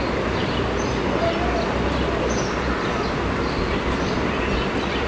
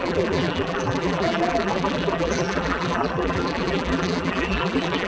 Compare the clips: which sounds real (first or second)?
first